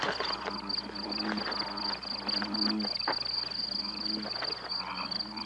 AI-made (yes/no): no